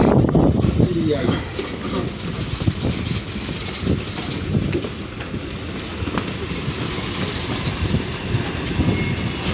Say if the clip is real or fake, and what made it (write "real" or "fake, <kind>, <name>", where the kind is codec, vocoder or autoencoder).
real